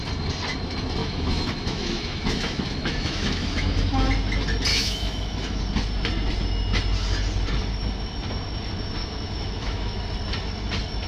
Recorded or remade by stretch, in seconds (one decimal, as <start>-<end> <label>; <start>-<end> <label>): 0.0-1.0 recorded; 1.0-4.1 remade; 4.1-4.7 recorded; 4.7-5.6 remade; 5.6-9.0 recorded; 9.0-10.0 remade; 10.0-11.1 recorded